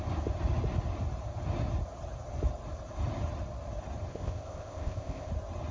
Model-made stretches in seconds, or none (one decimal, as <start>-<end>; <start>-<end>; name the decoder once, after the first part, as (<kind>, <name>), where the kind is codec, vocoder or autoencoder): 4.1-5.3 (codec, ZipCodec)